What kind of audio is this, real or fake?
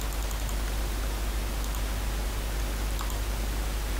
real